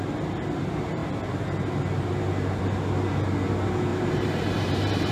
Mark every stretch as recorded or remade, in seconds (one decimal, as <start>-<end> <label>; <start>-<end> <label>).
0.0-3.9 recorded; 3.9-5.1 remade